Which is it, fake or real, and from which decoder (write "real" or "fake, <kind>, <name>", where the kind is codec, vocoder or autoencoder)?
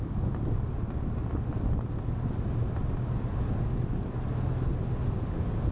real